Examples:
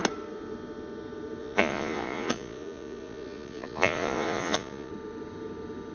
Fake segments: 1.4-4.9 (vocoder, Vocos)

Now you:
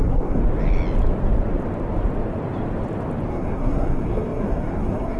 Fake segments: 0.0-0.4 (codec, SNAC); 3.3-5.2